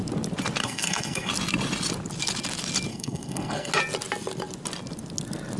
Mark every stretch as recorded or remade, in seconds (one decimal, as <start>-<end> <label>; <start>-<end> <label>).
0.0-0.6 recorded; 0.6-1.3 remade; 1.3-2.9 recorded; 2.9-3.7 remade; 3.7-5.6 recorded